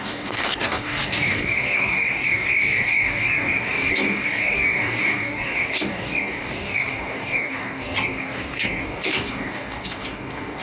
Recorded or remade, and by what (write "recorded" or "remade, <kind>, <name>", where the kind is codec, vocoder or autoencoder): remade, codec, DAC